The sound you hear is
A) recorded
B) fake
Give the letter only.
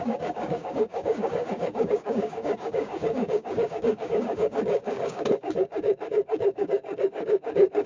B